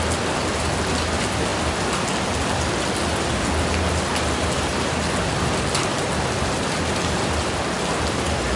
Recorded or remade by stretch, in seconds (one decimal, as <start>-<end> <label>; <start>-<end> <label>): 0.0-8.6 recorded